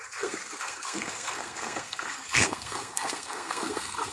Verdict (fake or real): fake